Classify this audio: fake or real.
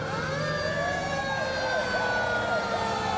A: real